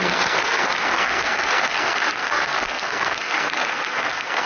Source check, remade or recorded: remade